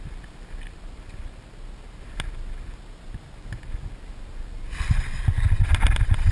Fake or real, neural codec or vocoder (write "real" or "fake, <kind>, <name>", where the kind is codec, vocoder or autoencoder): real